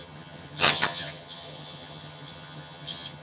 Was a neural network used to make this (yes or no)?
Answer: yes